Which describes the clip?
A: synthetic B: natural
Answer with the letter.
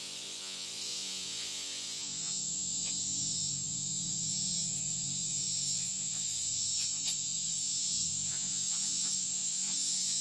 A